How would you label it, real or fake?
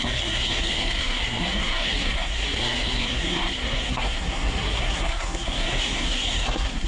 fake